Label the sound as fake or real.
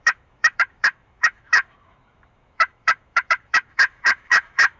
fake